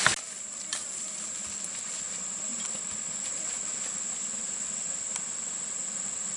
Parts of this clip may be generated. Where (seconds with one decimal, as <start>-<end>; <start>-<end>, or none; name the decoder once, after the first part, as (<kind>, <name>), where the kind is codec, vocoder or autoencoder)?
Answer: none